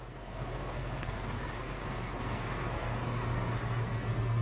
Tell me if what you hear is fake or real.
fake